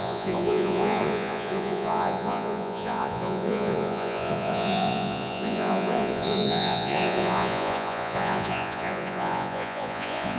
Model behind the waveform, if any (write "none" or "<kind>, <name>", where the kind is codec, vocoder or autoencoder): vocoder, Vocos